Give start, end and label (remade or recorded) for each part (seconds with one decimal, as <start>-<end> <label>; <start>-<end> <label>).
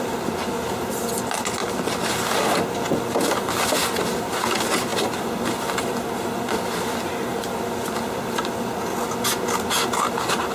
0.0-10.5 recorded